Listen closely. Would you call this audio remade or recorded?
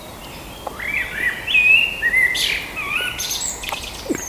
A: recorded